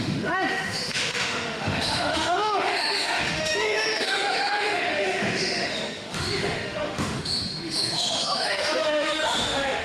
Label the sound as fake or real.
fake